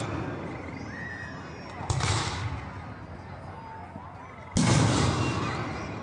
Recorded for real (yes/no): yes